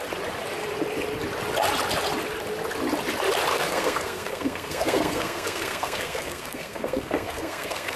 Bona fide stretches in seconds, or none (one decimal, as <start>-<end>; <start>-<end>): 0.0-3.5